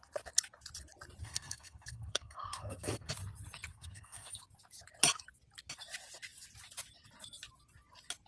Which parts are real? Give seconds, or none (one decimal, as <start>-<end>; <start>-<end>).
0.0-1.2; 3.1-3.7; 4.4-8.3